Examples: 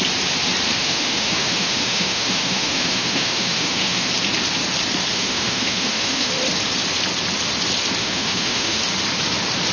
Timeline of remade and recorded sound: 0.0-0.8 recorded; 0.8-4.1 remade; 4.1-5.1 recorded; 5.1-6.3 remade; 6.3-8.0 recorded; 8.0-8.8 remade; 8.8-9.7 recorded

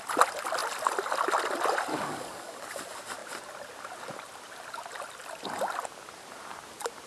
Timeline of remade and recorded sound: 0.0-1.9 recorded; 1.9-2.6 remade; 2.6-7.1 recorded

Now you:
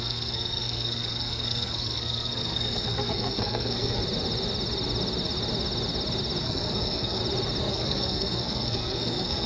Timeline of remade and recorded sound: 0.0-4.0 remade; 4.0-6.4 recorded; 6.4-7.2 remade; 7.2-7.7 recorded; 7.7-9.5 remade